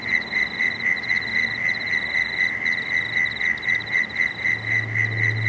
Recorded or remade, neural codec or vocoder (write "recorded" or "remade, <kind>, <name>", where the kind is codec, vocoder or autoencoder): recorded